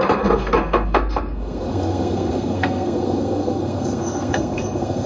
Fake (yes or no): yes